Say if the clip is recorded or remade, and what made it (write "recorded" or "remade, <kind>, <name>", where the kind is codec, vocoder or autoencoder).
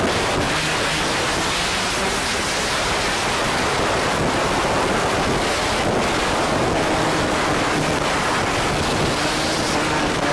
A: recorded